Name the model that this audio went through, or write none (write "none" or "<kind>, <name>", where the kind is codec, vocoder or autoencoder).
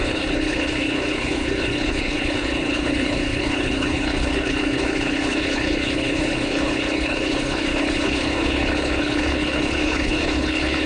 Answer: codec, HILCodec